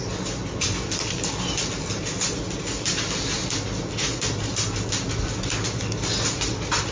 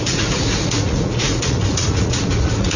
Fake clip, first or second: second